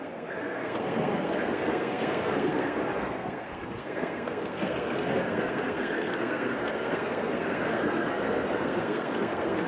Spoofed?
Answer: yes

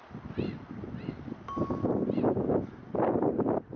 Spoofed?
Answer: no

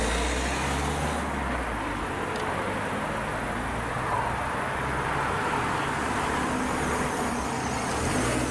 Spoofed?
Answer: no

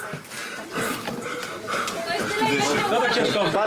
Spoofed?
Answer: no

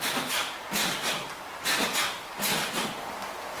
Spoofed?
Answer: no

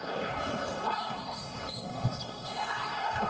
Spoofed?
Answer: yes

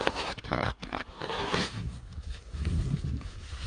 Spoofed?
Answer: yes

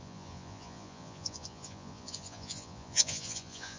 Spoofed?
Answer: yes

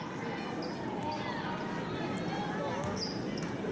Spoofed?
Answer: no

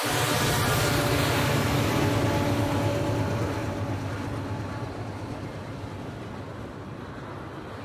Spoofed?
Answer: no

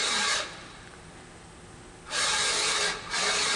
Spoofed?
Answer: no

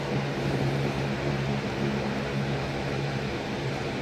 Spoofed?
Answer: yes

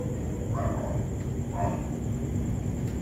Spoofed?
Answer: no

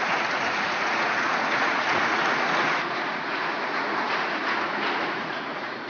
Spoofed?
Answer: yes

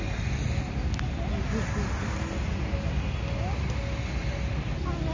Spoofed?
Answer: no